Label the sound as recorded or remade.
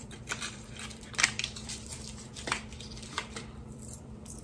remade